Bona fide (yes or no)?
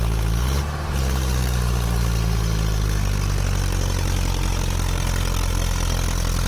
yes